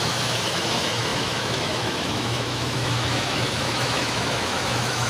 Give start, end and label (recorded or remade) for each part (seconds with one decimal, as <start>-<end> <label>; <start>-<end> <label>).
0.0-5.1 remade

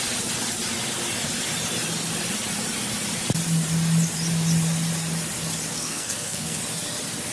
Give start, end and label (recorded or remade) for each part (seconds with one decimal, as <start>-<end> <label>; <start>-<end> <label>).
0.0-5.7 recorded; 5.7-6.6 remade; 6.6-7.3 recorded

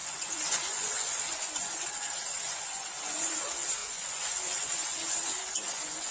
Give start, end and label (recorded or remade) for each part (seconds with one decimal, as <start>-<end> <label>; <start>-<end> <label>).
0.0-3.4 remade; 3.4-3.8 recorded; 3.8-6.1 remade

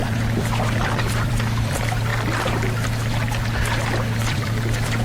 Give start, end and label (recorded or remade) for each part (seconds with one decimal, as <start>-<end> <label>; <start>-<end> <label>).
0.0-2.1 remade; 2.1-4.2 recorded; 4.2-5.0 remade

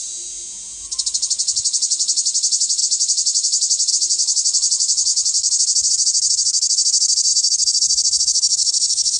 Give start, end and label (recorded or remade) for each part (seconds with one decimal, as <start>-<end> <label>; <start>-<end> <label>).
0.0-7.3 recorded; 7.3-9.2 remade

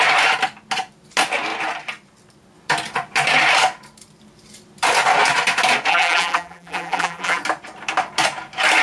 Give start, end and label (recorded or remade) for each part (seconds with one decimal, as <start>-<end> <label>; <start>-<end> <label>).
0.0-5.9 recorded; 5.9-7.4 remade; 7.4-8.8 recorded

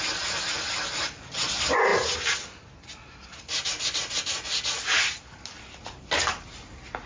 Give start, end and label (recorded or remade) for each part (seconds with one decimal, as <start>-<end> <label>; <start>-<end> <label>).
0.0-7.1 recorded

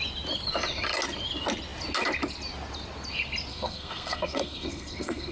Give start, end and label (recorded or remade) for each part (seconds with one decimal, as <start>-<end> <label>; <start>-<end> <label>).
0.0-3.5 recorded; 3.5-5.3 remade